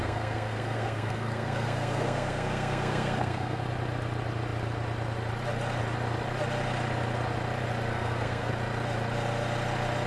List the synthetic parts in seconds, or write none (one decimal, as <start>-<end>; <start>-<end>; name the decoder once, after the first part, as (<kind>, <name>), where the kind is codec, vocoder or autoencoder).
0.0-3.6 (codec, SNAC); 7.9-8.5